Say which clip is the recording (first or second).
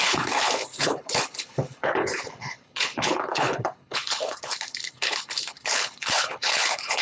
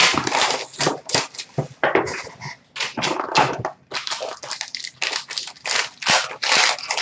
second